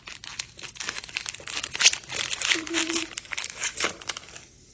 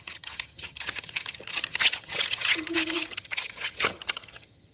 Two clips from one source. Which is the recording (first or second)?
first